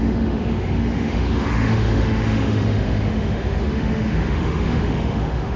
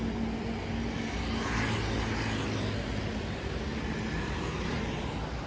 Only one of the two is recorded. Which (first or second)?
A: second